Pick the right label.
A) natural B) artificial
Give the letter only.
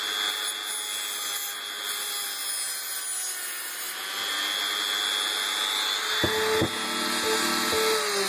A